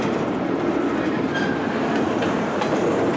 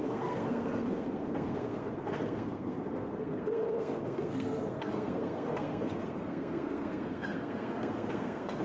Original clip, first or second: first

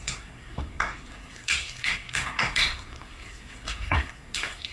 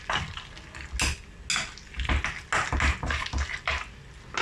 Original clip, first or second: second